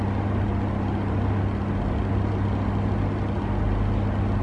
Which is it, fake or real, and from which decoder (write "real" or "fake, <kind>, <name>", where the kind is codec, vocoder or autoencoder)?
real